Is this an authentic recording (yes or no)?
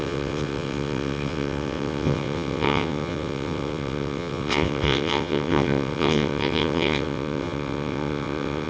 no